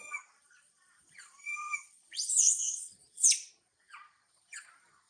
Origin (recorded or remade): remade